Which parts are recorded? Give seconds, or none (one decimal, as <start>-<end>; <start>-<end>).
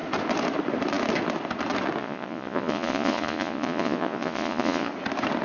0.0-2.0; 4.9-5.4